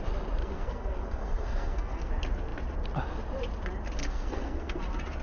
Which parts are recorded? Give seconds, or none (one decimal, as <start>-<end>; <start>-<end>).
0.0-0.4; 2.1-4.0; 4.8-5.2